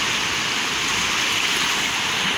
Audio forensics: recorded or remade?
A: recorded